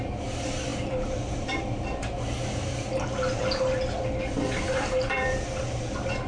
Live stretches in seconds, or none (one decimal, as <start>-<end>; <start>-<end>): 3.4-4.6